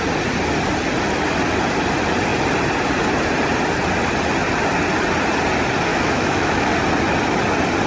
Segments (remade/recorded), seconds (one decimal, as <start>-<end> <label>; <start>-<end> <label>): 0.0-5.9 recorded; 5.9-6.7 remade; 6.7-7.9 recorded